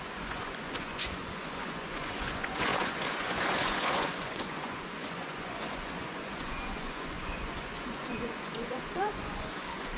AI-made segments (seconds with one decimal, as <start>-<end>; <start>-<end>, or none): 0.0-10.0